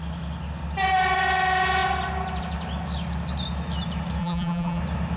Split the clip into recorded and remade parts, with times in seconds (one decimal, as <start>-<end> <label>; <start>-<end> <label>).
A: 0.0-4.2 recorded; 4.2-4.8 remade; 4.8-5.2 recorded